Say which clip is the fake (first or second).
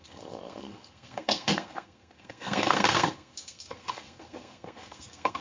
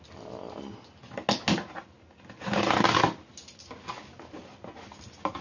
first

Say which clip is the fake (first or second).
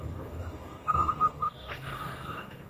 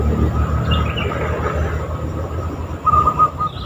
first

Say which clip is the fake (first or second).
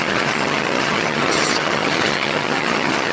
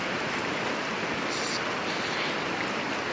first